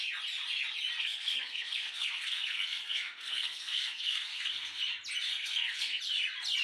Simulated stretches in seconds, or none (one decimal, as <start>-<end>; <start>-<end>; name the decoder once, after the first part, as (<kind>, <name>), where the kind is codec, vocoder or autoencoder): 1.0-4.8 (codec, SNAC); 5.3-6.0